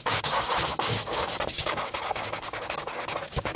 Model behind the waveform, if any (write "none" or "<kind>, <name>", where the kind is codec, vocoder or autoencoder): codec, DAC